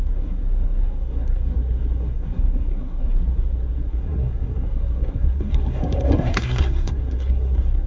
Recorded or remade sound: remade